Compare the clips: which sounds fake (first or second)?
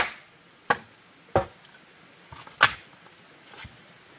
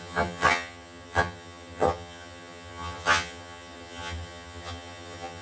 second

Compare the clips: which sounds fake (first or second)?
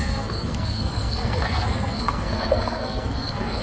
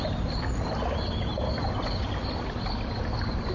first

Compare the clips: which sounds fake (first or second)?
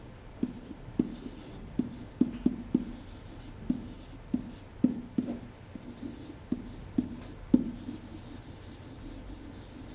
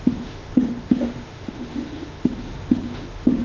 second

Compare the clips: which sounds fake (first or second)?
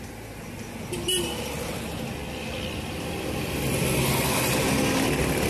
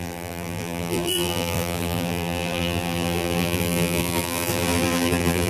second